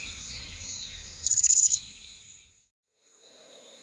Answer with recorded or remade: remade